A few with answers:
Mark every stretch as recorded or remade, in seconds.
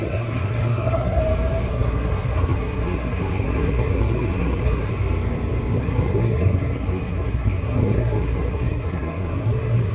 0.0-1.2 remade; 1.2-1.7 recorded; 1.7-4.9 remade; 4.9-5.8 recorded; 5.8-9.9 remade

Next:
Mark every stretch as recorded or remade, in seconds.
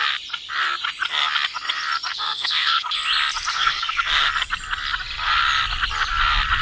0.0-2.1 recorded; 2.1-2.9 remade; 2.9-3.5 recorded; 3.5-4.3 remade; 4.3-6.6 recorded